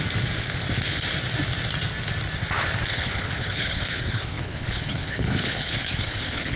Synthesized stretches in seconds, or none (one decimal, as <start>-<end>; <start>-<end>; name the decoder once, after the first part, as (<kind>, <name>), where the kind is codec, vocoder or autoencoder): 2.9-6.6 (codec, HILCodec)